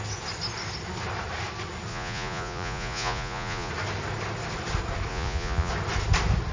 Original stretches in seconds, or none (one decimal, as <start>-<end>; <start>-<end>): 0.0-1.9; 3.7-5.1; 5.7-6.5